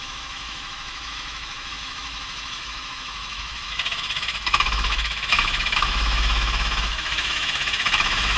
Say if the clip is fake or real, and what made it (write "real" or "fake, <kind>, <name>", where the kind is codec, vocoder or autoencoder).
fake, autoencoder, DAC-VAE